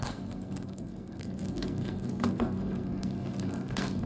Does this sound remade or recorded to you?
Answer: remade